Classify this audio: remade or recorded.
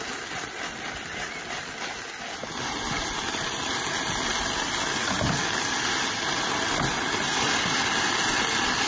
recorded